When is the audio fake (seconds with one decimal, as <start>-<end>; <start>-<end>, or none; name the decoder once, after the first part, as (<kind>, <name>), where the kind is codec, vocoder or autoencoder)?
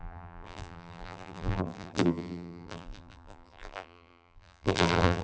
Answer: 0.0-5.2 (vocoder, BigVGAN v2)